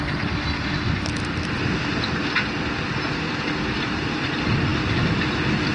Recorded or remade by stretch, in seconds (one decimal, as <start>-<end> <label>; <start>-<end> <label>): 0.0-5.7 recorded